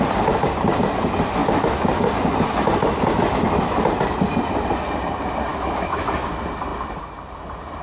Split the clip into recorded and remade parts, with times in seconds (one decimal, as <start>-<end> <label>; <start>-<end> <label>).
0.0-5.5 recorded; 5.5-6.3 remade; 6.3-7.8 recorded